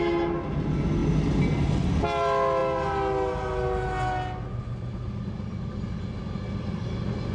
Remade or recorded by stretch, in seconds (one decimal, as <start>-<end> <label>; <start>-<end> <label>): 0.0-7.3 recorded